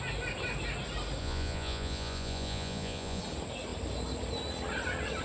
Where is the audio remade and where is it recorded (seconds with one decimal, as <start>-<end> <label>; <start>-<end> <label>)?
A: 0.0-1.2 recorded; 1.2-3.2 remade; 3.2-5.2 recorded